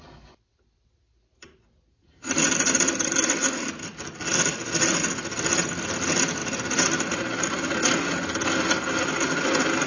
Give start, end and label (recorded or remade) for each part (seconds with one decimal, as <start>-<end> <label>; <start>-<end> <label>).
0.0-9.9 recorded